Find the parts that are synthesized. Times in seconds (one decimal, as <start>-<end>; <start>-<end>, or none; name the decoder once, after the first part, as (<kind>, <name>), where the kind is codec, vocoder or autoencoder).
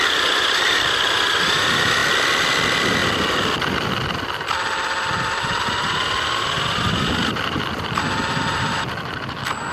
none